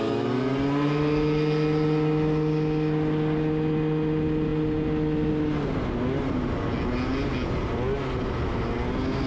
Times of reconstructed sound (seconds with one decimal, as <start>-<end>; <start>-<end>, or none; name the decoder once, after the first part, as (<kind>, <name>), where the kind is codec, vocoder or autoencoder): none